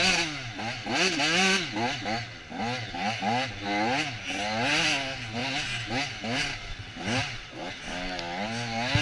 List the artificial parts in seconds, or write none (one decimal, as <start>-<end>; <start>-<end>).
none